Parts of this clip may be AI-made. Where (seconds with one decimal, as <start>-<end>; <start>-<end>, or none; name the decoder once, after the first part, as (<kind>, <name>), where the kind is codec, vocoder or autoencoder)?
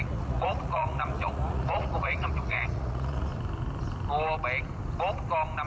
0.0-3.3 (vocoder, Vocos)